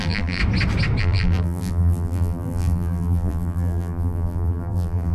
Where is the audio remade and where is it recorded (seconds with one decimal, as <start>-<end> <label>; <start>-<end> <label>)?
0.0-0.4 remade; 0.4-1.0 recorded; 1.0-5.1 remade